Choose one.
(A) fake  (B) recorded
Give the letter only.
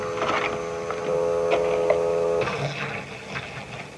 B